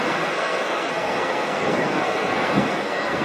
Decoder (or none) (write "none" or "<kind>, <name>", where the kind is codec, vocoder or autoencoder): codec, SNAC